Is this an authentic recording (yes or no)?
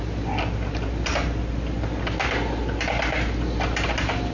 yes